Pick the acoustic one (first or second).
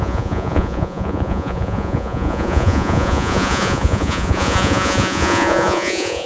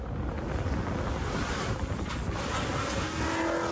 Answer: second